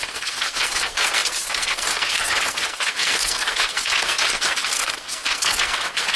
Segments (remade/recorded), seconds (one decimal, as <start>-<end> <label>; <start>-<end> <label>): 0.0-6.2 remade